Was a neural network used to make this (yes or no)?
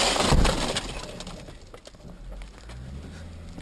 no